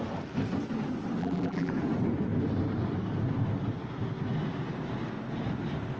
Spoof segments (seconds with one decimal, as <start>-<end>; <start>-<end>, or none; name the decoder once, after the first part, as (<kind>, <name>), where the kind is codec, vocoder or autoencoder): 1.2-1.7 (vocoder, BigVGAN v2)